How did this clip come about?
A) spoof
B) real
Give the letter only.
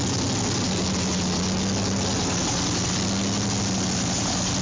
B